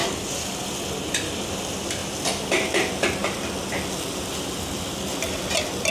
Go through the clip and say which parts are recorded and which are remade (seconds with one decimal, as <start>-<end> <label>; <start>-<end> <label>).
0.0-0.7 remade; 0.7-5.9 recorded